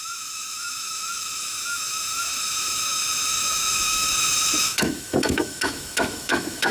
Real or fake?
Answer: fake